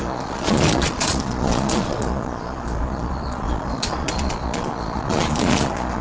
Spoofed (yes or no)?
yes